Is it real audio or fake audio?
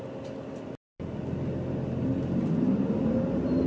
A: real